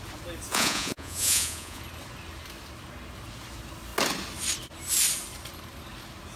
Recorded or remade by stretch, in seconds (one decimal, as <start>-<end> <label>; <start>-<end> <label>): 0.0-0.5 recorded; 0.5-1.8 remade; 1.8-6.4 recorded